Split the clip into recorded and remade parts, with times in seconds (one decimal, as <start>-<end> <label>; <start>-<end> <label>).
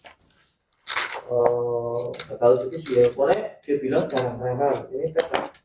0.0-0.6 recorded; 0.6-1.4 remade; 1.4-5.6 recorded